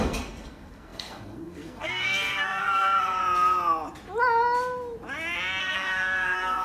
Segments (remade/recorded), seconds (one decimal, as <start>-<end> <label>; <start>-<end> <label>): 0.0-3.2 remade; 3.2-5.6 recorded; 5.6-6.6 remade